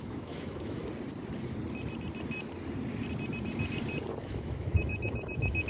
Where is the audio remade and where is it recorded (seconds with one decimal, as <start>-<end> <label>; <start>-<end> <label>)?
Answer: 0.0-0.8 remade; 0.8-4.2 recorded; 4.2-5.7 remade